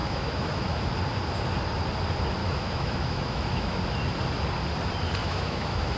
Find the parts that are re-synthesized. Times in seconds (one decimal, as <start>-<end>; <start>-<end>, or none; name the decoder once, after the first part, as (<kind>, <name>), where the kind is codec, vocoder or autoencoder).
0.0-0.8 (autoencoder, DAC-VAE); 2.4-3.7; 5.2-6.0